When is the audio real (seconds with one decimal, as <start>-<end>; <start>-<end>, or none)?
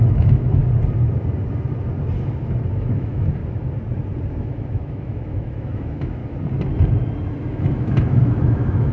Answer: 0.6-2.7; 3.4-4.3; 6.2-7.5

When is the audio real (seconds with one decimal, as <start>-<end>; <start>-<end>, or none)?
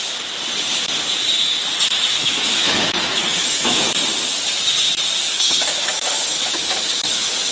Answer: 0.0-2.1; 3.9-5.3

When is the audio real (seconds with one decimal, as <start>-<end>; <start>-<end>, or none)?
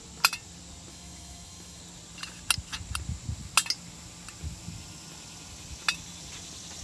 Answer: 0.0-0.9; 1.8-6.8